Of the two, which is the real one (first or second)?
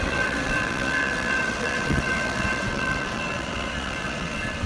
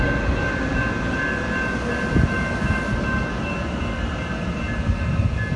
second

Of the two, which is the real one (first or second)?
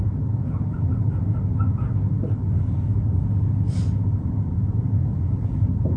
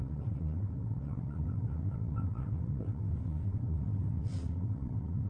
first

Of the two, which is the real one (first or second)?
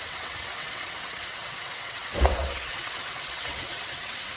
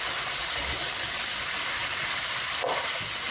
second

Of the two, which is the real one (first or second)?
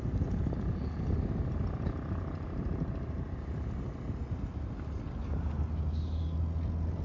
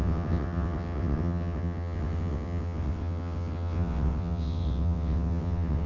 first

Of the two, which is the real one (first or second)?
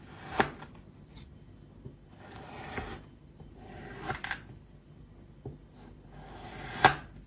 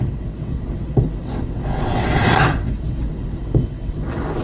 first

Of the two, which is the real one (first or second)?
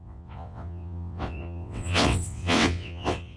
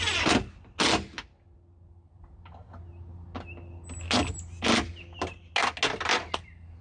second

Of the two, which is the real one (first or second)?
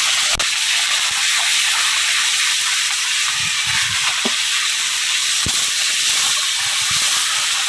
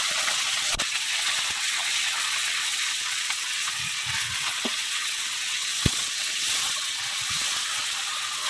first